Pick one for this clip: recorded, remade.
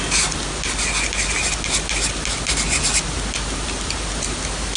recorded